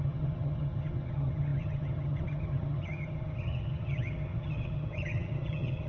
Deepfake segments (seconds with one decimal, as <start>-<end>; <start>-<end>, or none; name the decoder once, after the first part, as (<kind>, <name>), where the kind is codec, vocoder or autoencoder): 0.0-5.9 (vocoder, HiFi-GAN)